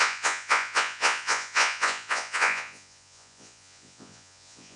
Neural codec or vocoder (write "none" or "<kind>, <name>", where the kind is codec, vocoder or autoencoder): vocoder, Vocos